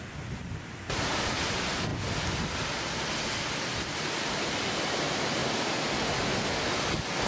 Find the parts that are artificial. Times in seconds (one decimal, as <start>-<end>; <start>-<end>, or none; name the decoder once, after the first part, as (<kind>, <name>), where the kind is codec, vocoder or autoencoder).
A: 0.4-1.3 (vocoder, BigVGAN v2); 5.4-5.9